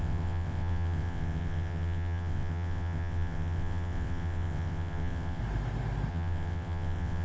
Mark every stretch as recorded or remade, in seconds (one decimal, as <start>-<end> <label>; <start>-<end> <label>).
0.0-5.4 remade; 5.4-6.1 recorded; 6.1-7.2 remade